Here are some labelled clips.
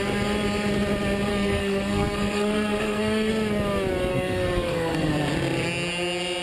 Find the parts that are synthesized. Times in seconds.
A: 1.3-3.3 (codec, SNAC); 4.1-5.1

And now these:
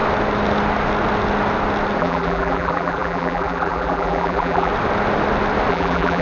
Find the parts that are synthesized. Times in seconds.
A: 2.0-4.7 (vocoder, BigVGAN v2); 5.7-6.2

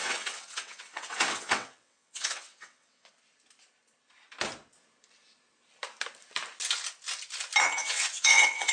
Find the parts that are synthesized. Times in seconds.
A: 0.0-3.1 (vocoder, WaveNeXt); 7.8-8.7

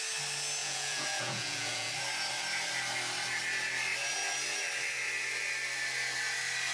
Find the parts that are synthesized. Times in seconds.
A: 0.6-1.9 (vocoder, Vocos)

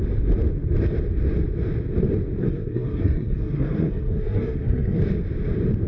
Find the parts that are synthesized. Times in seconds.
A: 2.4-5.0 (codec, SNAC)

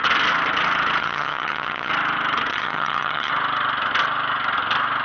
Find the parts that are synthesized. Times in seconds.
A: 1.0-1.9 (vocoder, HiFi-GAN); 2.5-3.3